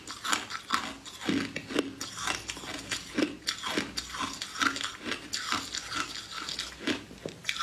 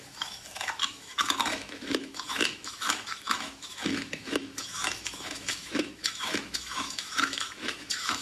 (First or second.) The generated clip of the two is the second